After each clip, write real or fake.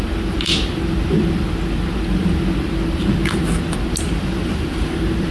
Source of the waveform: real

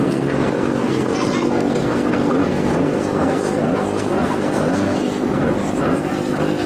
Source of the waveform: fake